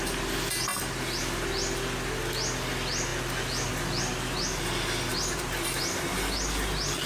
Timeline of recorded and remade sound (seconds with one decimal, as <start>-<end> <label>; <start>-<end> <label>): 0.0-5.1 recorded; 5.1-5.8 remade; 5.8-7.1 recorded